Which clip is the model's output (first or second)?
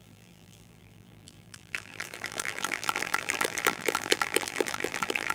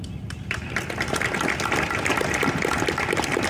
first